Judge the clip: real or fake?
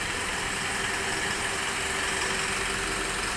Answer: real